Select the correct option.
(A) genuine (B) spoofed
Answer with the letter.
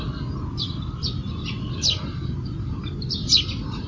A